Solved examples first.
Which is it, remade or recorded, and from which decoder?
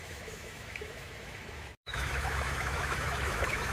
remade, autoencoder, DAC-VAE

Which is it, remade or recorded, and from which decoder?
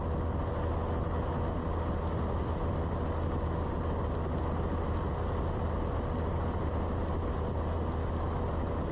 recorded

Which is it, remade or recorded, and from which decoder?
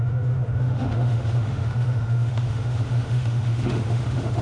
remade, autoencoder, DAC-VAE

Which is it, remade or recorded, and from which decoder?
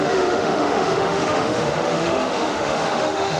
remade, autoencoder, DAC-VAE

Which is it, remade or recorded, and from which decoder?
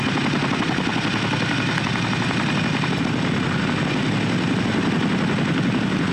recorded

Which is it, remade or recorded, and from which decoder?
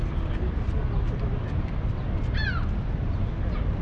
recorded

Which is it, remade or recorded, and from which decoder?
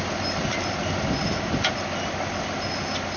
recorded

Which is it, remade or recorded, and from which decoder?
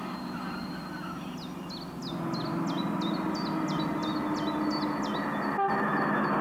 recorded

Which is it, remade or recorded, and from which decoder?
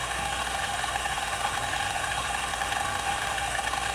remade, autoencoder, DAC-VAE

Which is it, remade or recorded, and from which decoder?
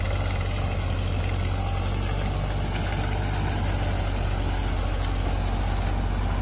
recorded